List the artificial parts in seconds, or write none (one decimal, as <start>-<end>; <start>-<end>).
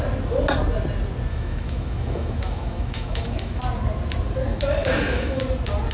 1.3-3.6; 4.8-5.4